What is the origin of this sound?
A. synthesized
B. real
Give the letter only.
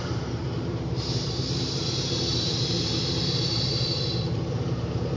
A